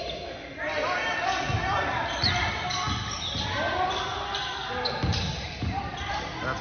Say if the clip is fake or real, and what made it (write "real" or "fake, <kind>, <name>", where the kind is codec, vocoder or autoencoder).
real